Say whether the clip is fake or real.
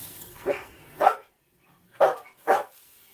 fake